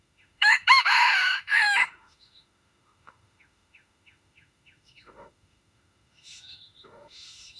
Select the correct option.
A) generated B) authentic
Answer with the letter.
A